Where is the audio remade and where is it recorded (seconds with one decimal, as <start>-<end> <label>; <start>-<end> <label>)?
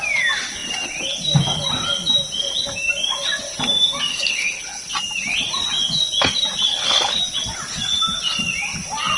0.0-4.1 recorded; 4.1-4.9 remade; 4.9-6.7 recorded; 6.7-7.2 remade; 7.2-9.2 recorded